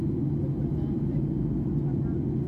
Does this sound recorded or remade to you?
recorded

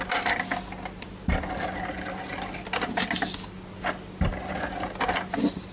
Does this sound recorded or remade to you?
recorded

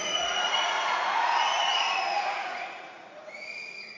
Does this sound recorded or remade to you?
remade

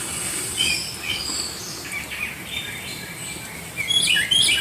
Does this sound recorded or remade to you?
recorded